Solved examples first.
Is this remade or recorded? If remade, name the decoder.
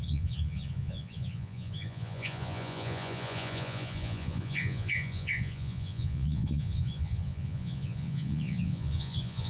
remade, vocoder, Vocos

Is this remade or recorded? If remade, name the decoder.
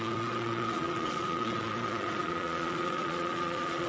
remade, vocoder, Vocos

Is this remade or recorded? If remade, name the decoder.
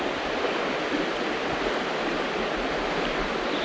recorded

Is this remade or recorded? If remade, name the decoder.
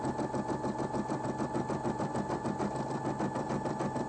recorded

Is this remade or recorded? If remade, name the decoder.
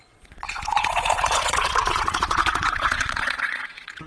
remade, vocoder, Vocos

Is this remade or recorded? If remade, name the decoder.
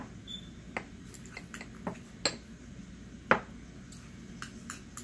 recorded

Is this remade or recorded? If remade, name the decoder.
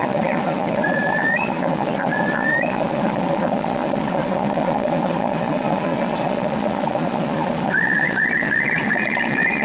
remade, vocoder, Vocos